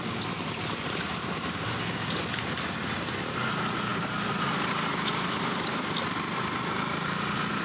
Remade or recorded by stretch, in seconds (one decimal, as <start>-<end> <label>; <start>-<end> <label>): 0.0-7.6 recorded